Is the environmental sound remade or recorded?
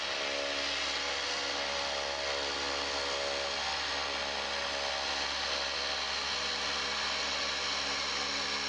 recorded